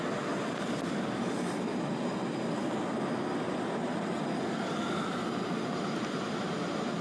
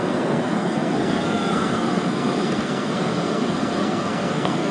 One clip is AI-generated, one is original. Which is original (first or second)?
first